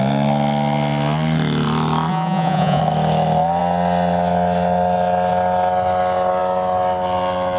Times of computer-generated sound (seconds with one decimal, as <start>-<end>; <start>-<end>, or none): 2.1-2.8